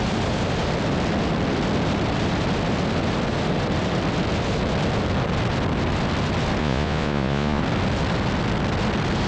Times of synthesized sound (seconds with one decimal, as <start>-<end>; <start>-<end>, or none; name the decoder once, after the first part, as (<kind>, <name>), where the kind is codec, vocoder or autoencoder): 6.6-7.6 (vocoder, Vocos)